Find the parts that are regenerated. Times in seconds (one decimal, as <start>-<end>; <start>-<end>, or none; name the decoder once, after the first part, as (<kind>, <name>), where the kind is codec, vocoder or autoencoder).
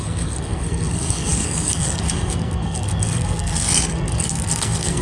0.0-5.0 (codec, SNAC)